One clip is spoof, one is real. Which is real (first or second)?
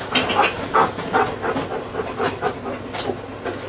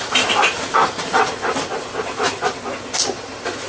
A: first